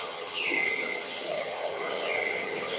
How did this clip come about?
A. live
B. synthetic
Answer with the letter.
B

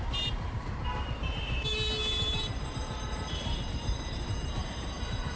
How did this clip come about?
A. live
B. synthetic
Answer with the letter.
B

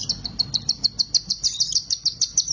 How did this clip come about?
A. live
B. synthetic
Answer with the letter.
A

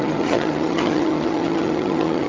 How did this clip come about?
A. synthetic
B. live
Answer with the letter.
A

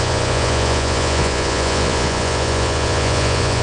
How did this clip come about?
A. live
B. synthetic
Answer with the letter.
B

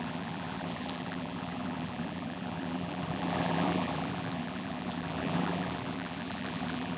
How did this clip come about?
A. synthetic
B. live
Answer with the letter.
A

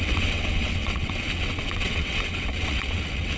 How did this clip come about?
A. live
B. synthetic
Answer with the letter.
B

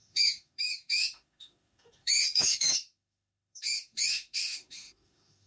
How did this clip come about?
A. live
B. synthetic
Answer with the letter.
B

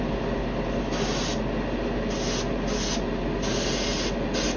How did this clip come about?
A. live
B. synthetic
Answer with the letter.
A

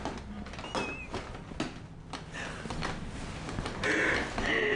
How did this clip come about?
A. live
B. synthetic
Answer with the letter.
A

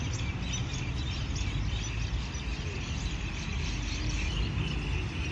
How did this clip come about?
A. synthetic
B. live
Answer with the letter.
B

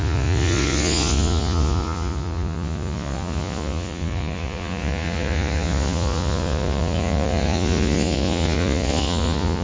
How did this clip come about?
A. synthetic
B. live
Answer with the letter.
A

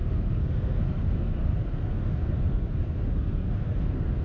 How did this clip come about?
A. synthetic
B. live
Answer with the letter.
A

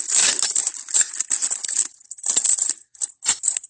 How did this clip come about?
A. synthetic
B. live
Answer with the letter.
B